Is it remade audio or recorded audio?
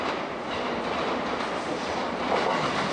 recorded